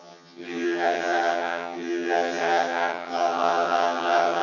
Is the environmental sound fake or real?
fake